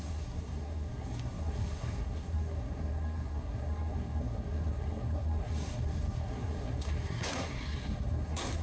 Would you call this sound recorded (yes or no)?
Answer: no